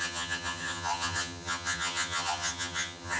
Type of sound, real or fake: fake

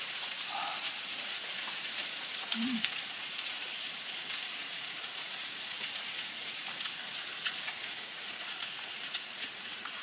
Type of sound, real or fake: fake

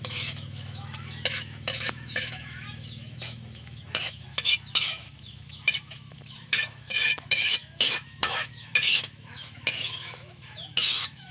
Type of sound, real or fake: fake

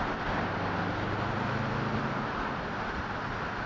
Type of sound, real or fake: real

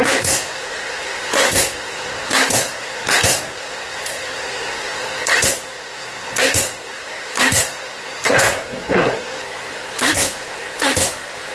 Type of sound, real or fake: fake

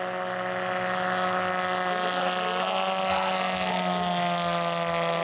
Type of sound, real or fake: real